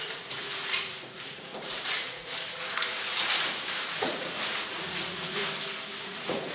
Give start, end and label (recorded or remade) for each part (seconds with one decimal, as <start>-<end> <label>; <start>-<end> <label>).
0.0-5.4 remade; 5.4-6.0 recorded; 6.0-6.5 remade